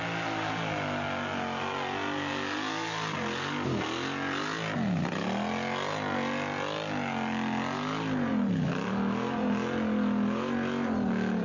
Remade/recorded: recorded